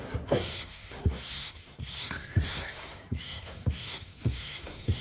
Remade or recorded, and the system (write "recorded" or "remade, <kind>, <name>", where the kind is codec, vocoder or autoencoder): remade, codec, SNAC